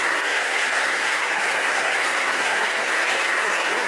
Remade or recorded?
remade